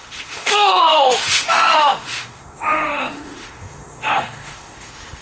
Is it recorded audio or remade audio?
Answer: remade